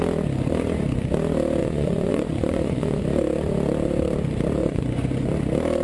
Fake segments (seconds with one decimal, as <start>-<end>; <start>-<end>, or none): 1.6-3.0; 4.6-5.3